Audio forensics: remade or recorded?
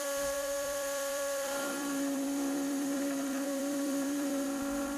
remade